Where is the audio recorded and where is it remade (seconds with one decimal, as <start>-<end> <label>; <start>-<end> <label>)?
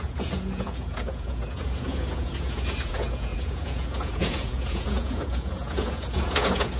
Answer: 0.0-6.8 remade